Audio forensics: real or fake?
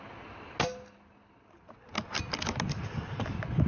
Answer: real